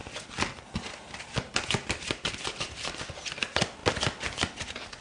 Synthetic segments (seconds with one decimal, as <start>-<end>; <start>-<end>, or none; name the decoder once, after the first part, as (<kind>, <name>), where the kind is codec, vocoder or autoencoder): none